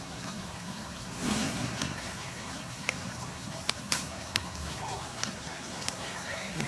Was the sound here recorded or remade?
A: remade